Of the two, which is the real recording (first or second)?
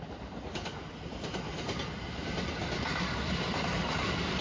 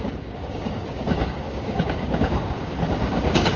first